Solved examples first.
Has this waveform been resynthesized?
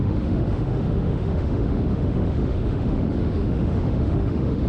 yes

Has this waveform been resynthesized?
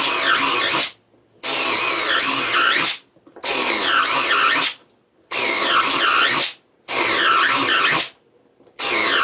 no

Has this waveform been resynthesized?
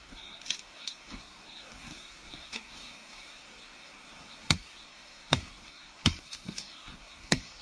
yes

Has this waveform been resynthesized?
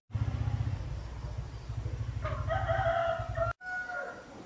no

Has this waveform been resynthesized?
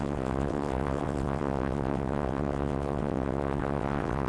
yes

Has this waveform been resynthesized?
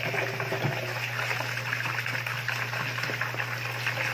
no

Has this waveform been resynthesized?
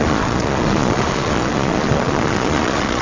yes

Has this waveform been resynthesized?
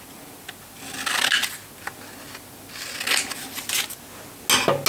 no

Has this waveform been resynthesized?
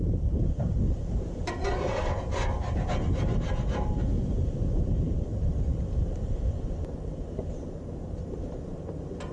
yes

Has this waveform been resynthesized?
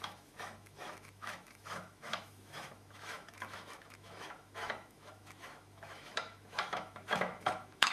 yes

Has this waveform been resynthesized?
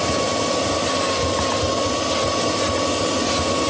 no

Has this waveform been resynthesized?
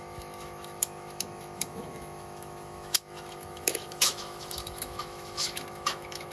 yes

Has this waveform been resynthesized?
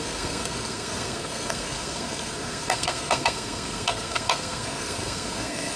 yes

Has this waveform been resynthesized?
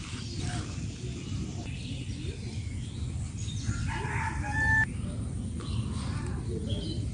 no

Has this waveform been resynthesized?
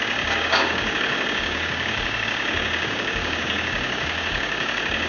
yes